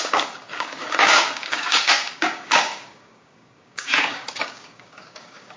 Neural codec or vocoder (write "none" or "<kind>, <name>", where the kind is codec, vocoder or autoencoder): codec, DAC